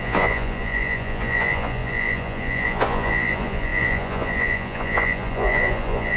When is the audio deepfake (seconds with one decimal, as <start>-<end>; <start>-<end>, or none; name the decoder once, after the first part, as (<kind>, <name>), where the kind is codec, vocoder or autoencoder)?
0.0-6.2 (vocoder, Vocos)